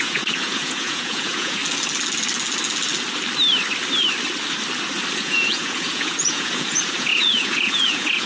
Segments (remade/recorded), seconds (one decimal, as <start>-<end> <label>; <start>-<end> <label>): 0.0-1.6 remade; 1.6-5.2 recorded; 5.2-8.3 remade